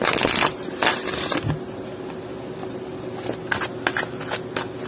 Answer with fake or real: real